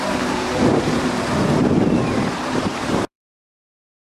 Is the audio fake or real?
fake